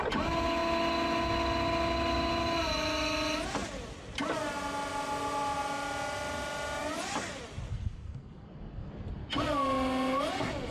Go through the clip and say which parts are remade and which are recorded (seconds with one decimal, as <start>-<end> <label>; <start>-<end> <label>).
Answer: 0.0-7.7 recorded; 7.7-8.9 remade; 8.9-10.7 recorded